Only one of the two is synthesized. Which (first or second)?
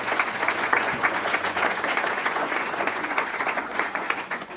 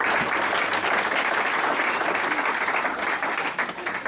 first